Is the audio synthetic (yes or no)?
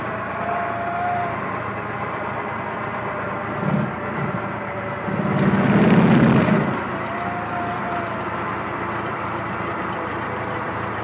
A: no